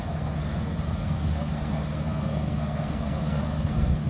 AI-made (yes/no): yes